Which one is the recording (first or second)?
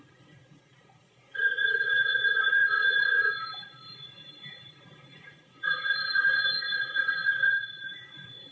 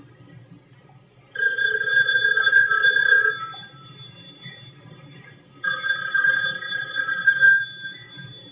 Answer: second